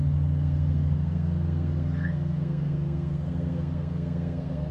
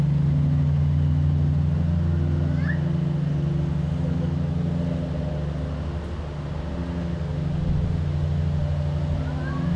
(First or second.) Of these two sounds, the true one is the second